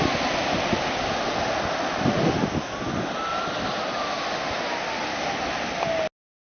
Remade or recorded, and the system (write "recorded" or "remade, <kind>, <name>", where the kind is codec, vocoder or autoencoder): recorded